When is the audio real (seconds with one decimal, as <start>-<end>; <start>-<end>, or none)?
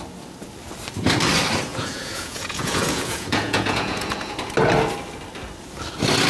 0.0-1.7; 4.3-6.3